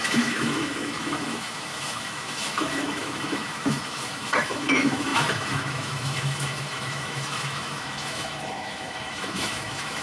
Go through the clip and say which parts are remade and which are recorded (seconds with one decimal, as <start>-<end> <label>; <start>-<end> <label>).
0.0-10.0 remade